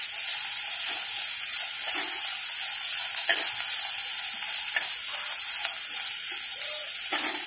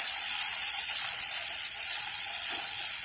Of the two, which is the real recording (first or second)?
first